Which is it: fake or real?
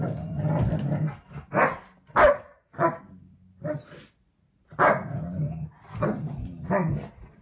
real